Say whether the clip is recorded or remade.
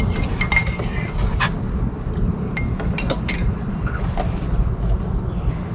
recorded